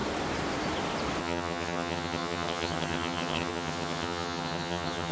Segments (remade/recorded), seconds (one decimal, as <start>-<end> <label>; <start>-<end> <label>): 0.0-1.2 recorded; 1.2-5.1 remade